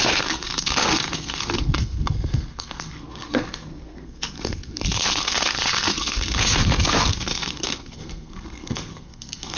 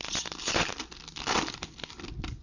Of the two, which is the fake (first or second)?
first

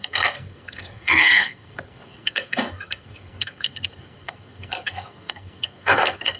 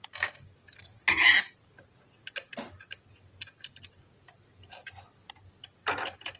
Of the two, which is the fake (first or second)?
first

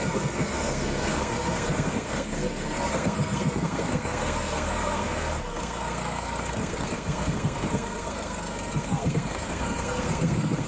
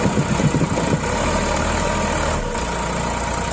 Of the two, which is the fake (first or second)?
first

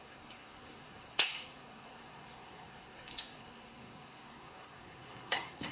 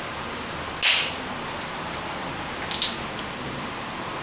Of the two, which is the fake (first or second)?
first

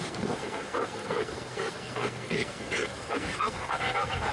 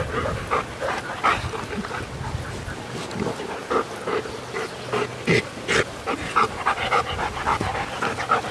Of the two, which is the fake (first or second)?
first